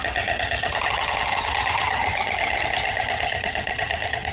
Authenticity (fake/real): fake